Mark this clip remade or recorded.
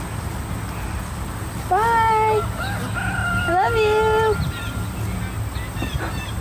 recorded